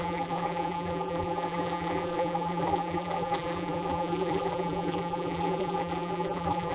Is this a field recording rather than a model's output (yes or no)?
no